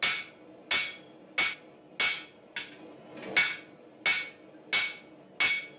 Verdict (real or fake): real